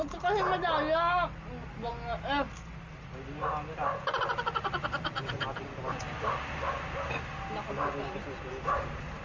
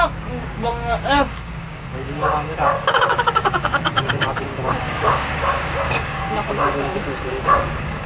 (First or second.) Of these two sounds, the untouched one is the first